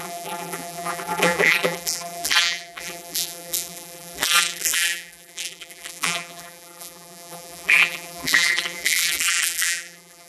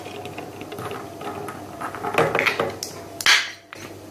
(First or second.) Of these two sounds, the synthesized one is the first